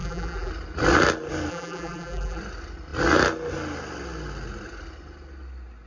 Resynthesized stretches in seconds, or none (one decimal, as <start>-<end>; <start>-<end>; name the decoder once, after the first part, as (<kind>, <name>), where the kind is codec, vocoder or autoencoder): 0.0-0.5 (vocoder, BigVGAN v2); 1.5-2.4